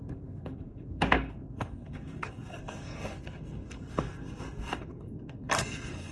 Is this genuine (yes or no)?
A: no